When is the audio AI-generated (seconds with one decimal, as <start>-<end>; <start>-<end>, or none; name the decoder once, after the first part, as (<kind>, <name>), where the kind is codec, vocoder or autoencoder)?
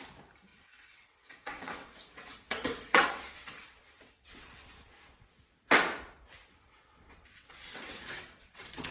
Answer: 0.5-5.5 (vocoder, WaveNeXt); 6.4-8.9